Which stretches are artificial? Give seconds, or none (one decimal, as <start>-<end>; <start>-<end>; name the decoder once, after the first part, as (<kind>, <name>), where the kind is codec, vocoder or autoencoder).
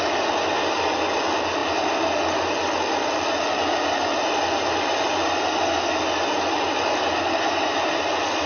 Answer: none